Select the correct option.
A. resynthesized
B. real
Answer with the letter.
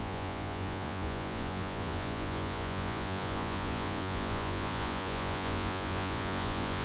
A